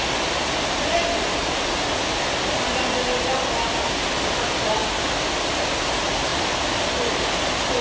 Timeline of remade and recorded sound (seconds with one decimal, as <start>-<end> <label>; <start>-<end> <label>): 0.0-7.8 recorded